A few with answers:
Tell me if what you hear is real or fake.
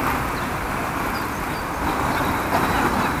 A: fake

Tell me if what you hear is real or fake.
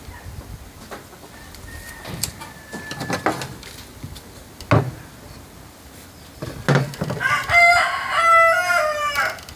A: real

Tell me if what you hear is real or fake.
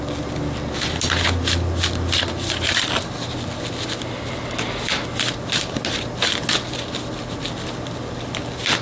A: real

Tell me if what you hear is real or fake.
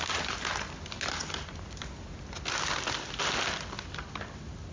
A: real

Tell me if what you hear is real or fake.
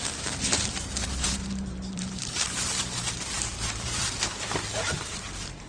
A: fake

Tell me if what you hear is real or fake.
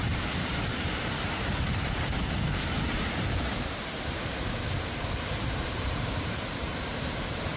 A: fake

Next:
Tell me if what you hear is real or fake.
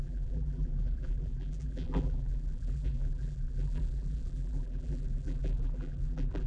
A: fake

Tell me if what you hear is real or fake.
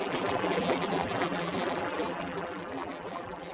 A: fake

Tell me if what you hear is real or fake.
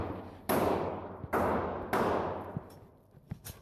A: real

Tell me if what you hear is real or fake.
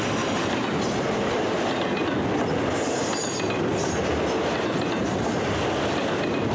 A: real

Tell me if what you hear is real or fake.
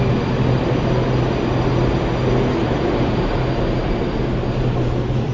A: real